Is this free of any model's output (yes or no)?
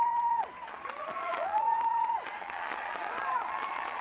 no